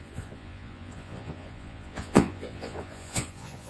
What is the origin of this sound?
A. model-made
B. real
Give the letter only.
A